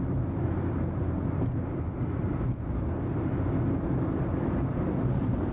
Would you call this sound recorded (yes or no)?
yes